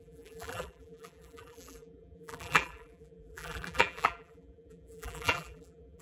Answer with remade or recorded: remade